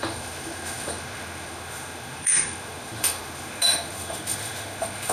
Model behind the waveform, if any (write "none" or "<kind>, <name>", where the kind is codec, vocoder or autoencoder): autoencoder, DAC-VAE